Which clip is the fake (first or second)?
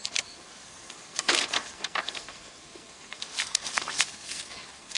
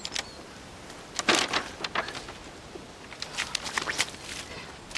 first